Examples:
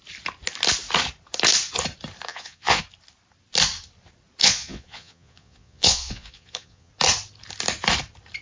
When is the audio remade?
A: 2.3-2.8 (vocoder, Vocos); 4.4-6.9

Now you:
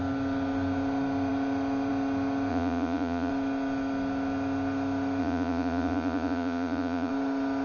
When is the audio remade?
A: 2.5-3.3 (vocoder, Vocos); 5.2-7.1

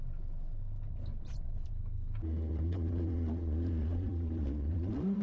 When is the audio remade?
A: 1.1-1.7 (vocoder, Vocos); 2.5-5.2

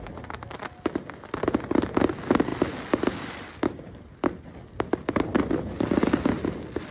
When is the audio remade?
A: none